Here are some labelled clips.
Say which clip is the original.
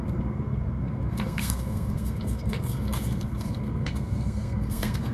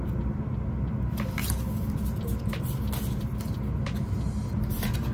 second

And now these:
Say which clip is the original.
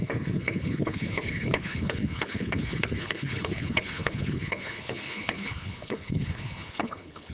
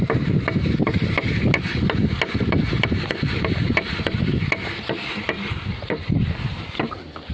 second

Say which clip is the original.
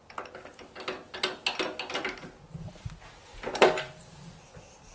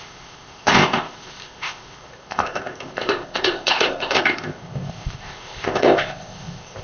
first